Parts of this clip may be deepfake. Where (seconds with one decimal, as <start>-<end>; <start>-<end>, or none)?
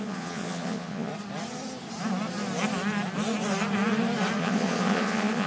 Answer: 0.0-1.1; 4.4-5.5